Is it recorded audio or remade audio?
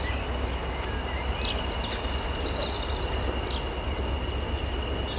recorded